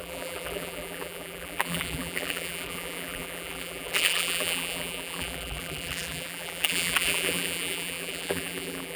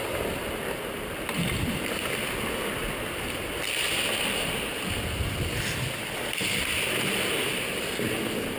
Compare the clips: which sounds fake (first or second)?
first